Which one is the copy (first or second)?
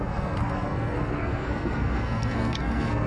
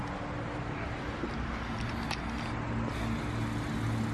first